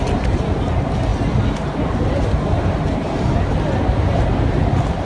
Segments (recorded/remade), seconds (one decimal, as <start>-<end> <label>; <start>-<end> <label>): 0.0-5.1 recorded